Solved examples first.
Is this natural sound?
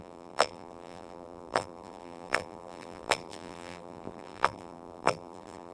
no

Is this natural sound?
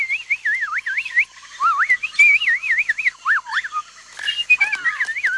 yes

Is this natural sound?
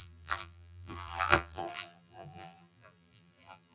no